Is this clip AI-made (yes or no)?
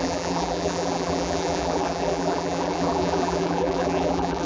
yes